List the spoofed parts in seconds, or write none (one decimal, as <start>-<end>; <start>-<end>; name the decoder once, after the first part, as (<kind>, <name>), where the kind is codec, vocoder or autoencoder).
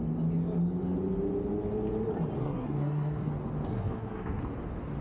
2.4-3.3 (codec, SNAC); 3.7-4.4